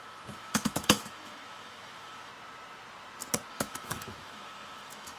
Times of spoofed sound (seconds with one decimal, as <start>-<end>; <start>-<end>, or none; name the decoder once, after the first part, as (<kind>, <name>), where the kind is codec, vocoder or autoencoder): 0.0-2.3 (autoencoder, DAC-VAE); 3.5-5.2